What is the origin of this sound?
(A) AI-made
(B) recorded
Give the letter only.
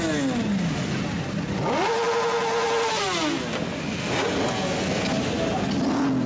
B